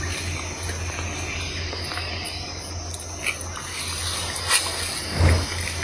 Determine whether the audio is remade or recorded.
recorded